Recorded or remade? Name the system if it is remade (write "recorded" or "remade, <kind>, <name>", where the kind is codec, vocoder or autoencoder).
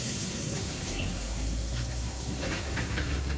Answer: remade, codec, SNAC